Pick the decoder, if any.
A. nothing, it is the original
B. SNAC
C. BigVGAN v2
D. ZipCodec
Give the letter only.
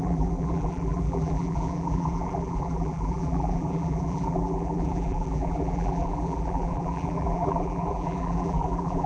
C